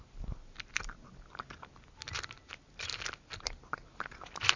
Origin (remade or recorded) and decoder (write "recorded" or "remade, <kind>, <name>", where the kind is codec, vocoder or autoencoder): recorded